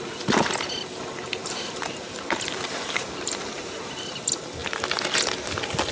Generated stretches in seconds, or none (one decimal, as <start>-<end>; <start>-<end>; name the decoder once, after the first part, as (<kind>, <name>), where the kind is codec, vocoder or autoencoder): 1.4-3.8 (vocoder, BigVGAN v2)